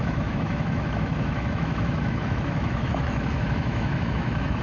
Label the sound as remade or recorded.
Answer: remade